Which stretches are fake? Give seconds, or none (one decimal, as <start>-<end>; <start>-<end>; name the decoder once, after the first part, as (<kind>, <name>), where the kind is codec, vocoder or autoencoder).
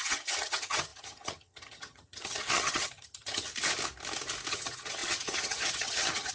0.0-3.5 (vocoder, HiFi-GAN); 4.5-6.3